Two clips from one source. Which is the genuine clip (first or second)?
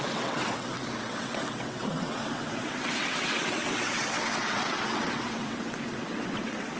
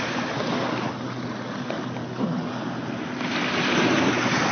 second